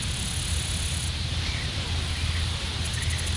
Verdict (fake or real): real